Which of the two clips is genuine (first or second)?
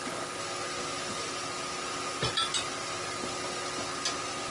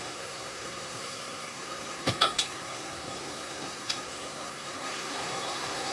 first